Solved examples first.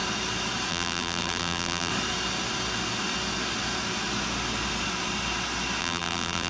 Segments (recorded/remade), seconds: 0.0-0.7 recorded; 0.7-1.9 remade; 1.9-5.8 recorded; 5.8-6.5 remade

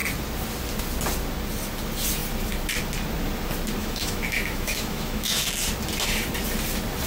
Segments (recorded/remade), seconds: 0.0-3.8 recorded; 3.8-5.5 remade; 5.5-7.1 recorded